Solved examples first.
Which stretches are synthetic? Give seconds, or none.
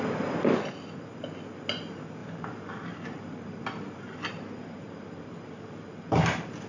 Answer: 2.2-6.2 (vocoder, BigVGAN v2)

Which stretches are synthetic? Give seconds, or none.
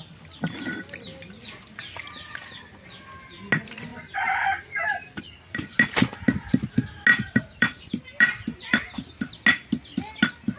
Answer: 3.9-5.2 (vocoder, BigVGAN v2); 7.1-9.1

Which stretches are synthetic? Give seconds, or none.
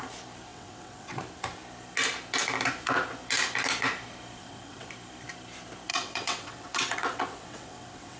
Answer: 0.5-1.2 (vocoder, WaveNeXt); 4.4-4.9; 5.9-8.2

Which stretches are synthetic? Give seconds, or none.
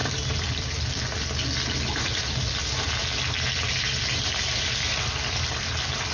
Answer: none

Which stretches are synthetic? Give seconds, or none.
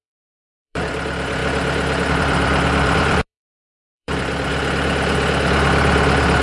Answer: 0.0-1.4 (vocoder, BigVGAN v2); 2.1-4.5